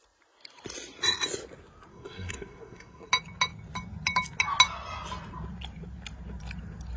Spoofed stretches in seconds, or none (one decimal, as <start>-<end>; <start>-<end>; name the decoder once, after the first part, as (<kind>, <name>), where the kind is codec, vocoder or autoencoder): 1.9-3.1 (codec, SNAC)